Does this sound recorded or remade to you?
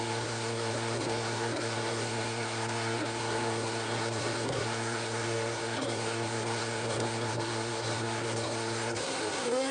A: remade